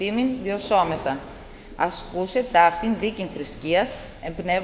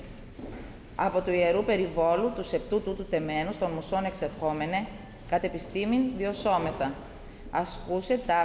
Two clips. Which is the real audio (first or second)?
second